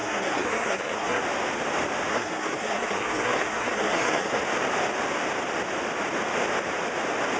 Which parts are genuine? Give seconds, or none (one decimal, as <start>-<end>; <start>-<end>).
1.2-2.1; 4.4-7.4